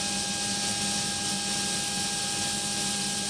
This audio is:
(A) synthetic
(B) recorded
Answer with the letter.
B